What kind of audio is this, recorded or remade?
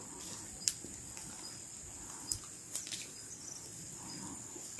remade